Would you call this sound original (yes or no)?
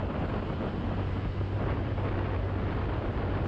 yes